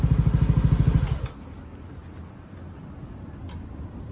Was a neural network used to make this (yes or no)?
no